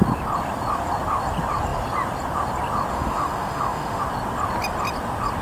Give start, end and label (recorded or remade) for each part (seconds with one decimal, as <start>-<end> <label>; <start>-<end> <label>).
0.0-2.9 recorded; 2.9-4.0 remade; 4.0-5.4 recorded